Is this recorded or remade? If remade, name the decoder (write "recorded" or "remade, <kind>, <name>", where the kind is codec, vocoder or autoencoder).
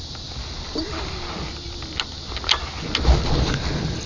recorded